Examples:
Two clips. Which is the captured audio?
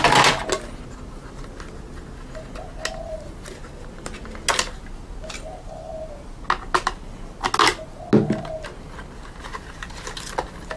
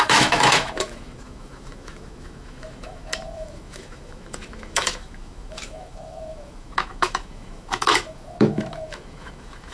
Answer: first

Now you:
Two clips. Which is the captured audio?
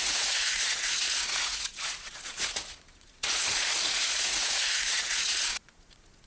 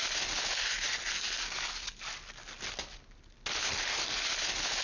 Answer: second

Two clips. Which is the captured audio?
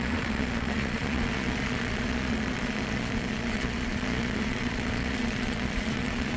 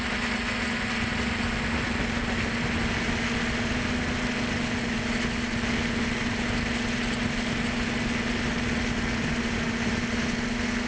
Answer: second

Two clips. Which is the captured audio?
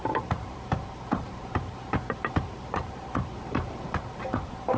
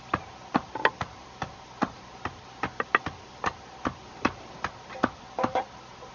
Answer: second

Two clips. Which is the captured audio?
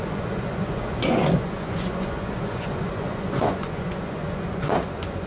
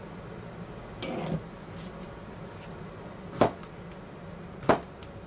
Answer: second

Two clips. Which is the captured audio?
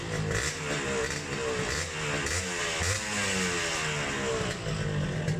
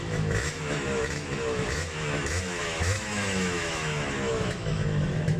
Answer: first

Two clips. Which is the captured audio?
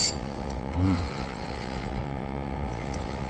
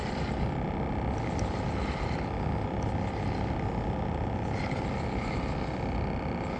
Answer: second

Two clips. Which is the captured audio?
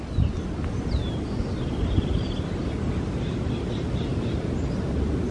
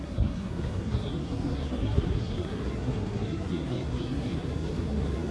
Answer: first